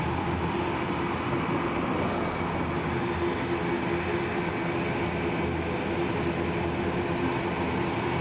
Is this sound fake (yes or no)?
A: no